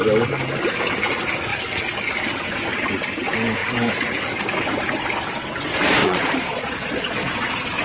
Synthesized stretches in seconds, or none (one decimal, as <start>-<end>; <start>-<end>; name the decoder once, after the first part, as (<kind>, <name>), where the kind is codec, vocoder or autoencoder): 6.0-7.1 (vocoder, Vocos)